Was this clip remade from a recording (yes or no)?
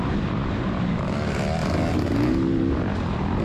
no